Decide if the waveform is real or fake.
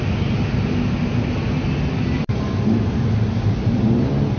real